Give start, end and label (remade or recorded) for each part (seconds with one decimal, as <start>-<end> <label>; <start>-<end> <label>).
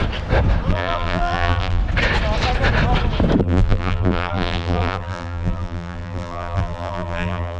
0.0-0.7 recorded; 0.7-1.8 remade; 1.8-3.4 recorded; 3.4-7.6 remade